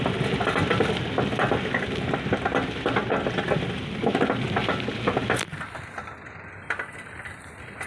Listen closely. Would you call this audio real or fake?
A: real